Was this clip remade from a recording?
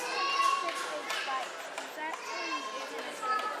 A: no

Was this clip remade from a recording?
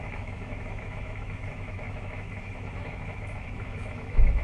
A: yes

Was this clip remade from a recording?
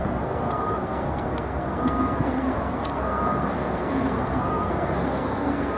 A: yes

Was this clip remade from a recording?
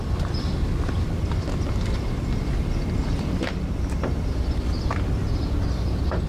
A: yes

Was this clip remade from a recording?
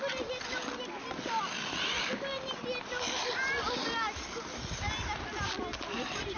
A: no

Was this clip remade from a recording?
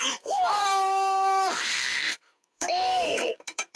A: yes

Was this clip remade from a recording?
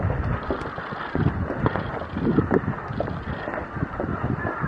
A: no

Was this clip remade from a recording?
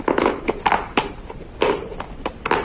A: no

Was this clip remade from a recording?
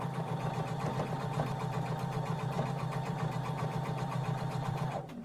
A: yes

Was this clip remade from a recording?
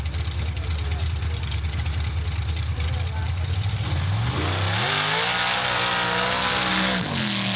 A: no